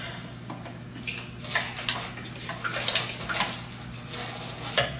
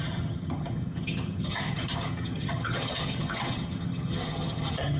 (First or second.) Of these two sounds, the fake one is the second